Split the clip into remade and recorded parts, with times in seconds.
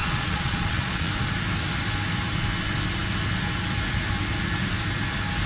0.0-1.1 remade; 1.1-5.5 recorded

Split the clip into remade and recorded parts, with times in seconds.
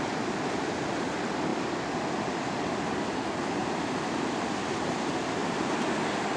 0.0-3.6 recorded; 3.6-5.0 remade; 5.0-5.4 recorded; 5.4-5.9 remade; 5.9-6.4 recorded